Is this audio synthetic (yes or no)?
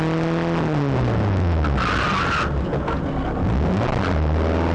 no